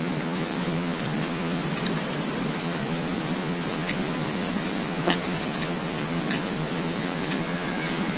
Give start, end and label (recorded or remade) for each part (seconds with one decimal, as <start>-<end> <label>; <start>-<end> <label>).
0.0-1.6 remade; 1.6-2.5 recorded; 2.5-8.2 remade